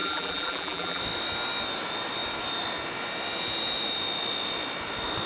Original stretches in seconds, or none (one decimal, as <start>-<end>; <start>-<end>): 1.0-5.3